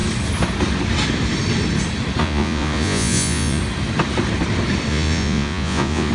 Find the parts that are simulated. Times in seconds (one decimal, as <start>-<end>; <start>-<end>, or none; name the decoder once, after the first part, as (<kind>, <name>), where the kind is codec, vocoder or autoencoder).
2.2-3.6 (vocoder, Vocos); 4.9-6.1

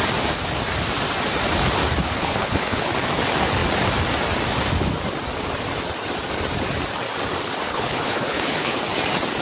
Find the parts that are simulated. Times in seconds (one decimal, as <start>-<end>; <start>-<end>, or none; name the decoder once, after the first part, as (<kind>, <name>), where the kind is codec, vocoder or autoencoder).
2.0-2.9 (codec, HILCodec); 7.7-8.8